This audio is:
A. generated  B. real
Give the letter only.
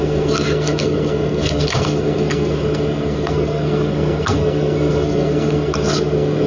A